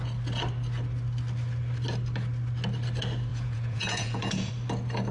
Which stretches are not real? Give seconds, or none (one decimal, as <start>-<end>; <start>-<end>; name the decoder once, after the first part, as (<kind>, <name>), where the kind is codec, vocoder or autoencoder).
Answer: 3.3-4.5 (vocoder, Vocos)